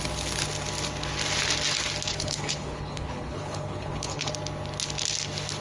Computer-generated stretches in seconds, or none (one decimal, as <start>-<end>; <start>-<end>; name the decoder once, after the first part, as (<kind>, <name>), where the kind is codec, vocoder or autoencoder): 2.1-4.3 (codec, HILCodec)